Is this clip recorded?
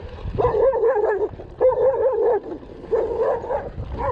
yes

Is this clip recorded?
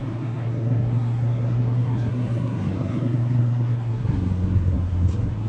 no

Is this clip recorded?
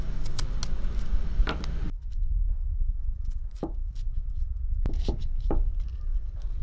yes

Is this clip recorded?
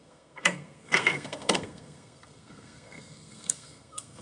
no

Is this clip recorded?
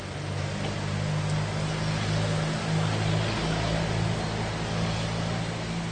yes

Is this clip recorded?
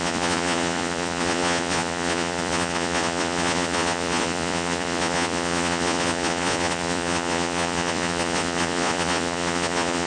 no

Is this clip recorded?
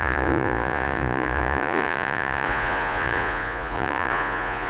no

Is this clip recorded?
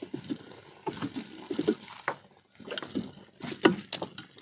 yes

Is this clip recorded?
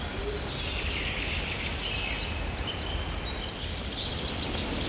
yes